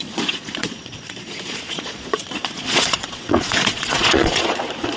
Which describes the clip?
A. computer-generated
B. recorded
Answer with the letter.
A